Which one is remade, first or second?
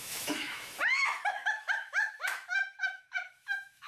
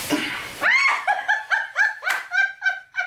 first